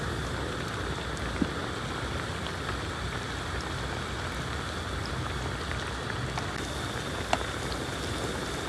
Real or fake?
real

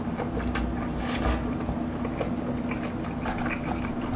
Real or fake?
real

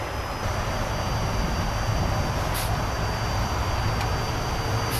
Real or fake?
real